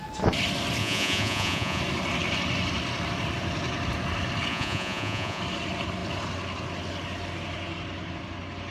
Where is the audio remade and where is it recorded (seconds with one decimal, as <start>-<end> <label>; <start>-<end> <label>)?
0.0-0.8 recorded; 0.8-1.8 remade; 1.8-4.5 recorded; 4.5-5.4 remade; 5.4-8.7 recorded